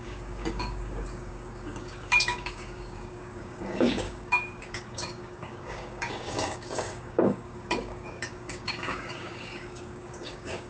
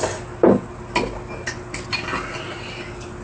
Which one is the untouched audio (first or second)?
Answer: second